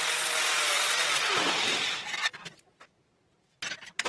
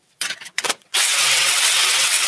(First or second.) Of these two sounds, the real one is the first